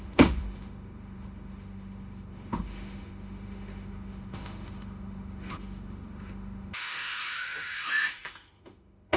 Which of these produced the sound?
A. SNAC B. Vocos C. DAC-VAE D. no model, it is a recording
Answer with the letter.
C